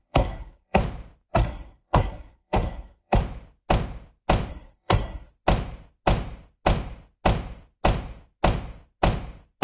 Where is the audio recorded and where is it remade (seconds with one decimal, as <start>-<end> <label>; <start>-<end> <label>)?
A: 0.0-0.8 remade; 0.8-1.3 recorded; 1.3-3.2 remade; 3.2-4.5 recorded; 4.5-5.3 remade; 5.3-9.6 recorded

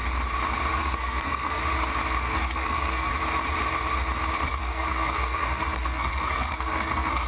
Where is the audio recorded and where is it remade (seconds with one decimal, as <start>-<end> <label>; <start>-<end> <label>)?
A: 0.0-0.7 recorded; 0.7-1.6 remade; 1.6-2.2 recorded; 2.2-3.1 remade; 3.1-4.5 recorded; 4.5-7.3 remade

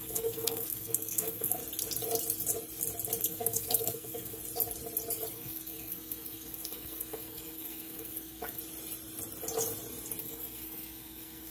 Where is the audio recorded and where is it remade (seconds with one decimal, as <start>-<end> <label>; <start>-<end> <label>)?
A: 0.0-1.6 remade; 1.6-3.2 recorded; 3.2-4.4 remade; 4.4-5.3 recorded; 5.3-8.6 remade; 8.6-10.2 recorded; 10.2-11.5 remade

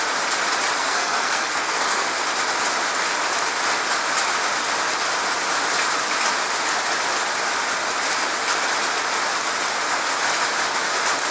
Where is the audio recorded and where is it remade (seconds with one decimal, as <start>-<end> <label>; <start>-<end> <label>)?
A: 0.0-0.8 recorded; 0.8-2.1 remade; 2.1-11.3 recorded

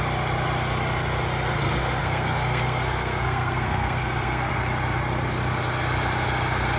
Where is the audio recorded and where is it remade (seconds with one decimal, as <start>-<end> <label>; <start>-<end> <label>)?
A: 0.0-2.0 recorded; 2.0-4.5 remade; 4.5-6.8 recorded